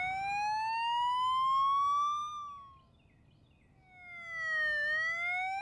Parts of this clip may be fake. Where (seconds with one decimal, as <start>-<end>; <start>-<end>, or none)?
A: none

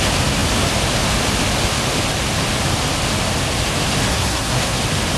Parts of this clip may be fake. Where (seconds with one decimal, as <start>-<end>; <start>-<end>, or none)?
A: 4.1-4.8

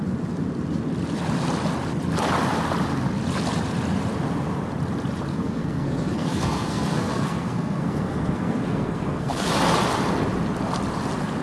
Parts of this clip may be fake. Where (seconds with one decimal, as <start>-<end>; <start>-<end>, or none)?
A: 5.3-9.5

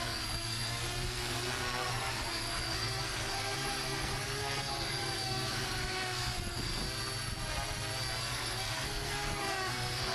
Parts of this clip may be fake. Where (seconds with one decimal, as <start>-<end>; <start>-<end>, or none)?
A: 0.0-6.8; 8.2-10.1

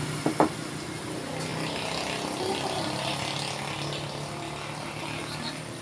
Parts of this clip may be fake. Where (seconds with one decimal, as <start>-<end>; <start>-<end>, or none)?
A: none